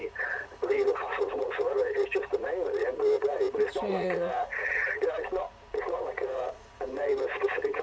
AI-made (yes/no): yes